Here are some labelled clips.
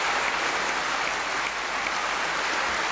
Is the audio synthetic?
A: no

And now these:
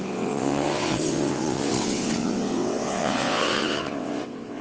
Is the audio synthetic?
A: yes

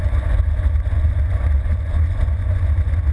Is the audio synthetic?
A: yes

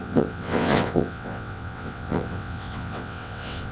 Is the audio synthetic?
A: yes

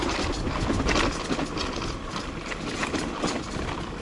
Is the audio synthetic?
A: no